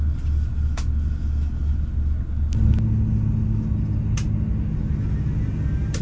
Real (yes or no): yes